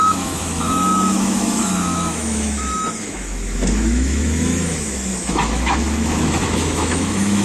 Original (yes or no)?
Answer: no